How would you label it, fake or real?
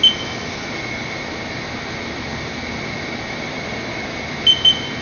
real